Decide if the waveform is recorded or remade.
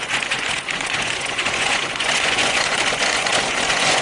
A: remade